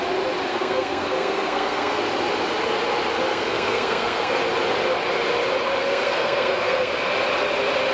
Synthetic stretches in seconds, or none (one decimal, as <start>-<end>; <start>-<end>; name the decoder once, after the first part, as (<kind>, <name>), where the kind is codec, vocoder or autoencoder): 0.5-2.0 (codec, SNAC); 3.3-4.4; 5.8-6.9